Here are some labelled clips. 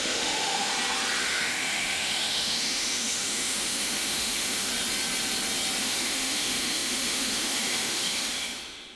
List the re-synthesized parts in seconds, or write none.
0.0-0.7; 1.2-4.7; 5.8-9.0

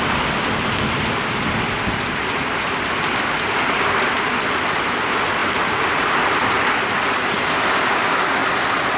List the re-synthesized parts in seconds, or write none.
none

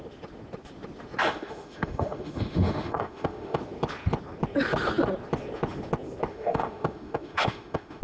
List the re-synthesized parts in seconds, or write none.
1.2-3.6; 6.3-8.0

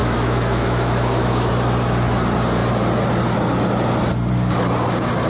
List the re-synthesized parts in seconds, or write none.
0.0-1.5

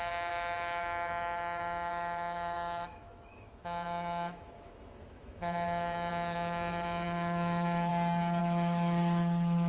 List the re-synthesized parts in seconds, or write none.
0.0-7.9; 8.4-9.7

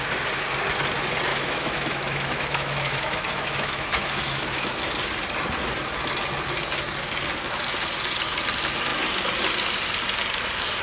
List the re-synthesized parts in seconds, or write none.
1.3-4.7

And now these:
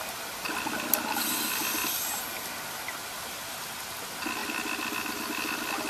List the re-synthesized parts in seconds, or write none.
none